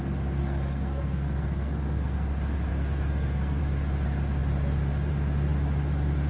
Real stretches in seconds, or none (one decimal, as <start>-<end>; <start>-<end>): 0.0-0.4; 2.3-2.7; 3.6-6.3

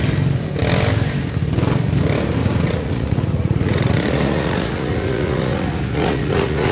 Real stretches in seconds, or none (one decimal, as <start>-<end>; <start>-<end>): 0.0-2.4

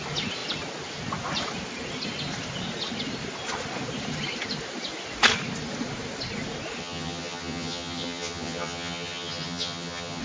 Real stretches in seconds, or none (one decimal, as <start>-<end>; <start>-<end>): 0.0-6.8

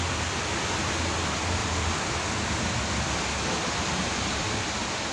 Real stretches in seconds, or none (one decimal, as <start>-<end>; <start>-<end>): none

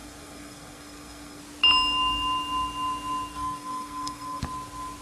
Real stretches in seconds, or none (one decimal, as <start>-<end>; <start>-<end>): 1.4-3.3; 4.4-5.0

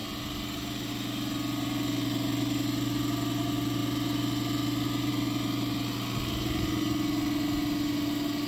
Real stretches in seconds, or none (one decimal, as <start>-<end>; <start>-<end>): 0.0-8.5

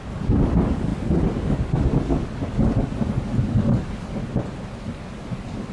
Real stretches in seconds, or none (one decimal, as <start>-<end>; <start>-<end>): 4.2-4.8

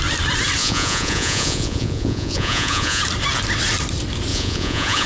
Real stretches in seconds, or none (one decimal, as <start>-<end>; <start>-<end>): 0.0-0.6; 3.0-4.3